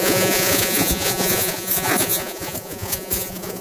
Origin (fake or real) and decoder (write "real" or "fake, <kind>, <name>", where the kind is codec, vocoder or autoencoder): fake, vocoder, Vocos